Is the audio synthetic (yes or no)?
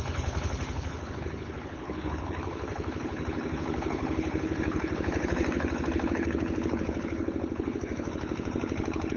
yes